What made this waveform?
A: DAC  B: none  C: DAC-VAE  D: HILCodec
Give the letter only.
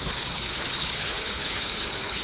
D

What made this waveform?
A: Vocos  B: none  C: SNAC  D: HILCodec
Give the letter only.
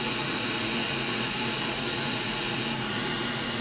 A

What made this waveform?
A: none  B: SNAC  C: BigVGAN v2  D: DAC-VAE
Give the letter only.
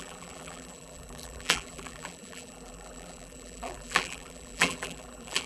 C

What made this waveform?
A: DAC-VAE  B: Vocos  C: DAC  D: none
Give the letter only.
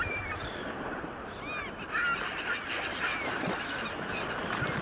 D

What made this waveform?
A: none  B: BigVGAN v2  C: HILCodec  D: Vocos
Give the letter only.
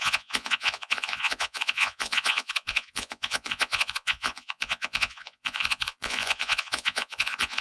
D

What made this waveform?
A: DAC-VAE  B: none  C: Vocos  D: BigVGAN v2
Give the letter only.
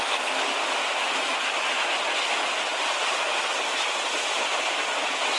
B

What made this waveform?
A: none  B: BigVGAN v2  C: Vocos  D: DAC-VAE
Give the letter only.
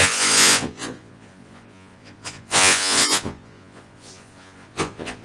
C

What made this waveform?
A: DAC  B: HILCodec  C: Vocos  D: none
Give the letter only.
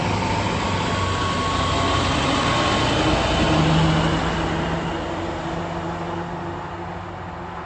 D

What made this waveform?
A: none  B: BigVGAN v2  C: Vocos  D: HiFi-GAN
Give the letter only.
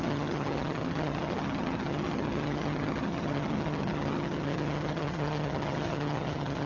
D